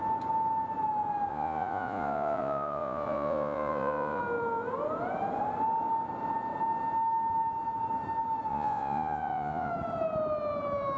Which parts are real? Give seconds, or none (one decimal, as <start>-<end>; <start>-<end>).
0.0-1.3; 4.2-8.5; 9.7-11.0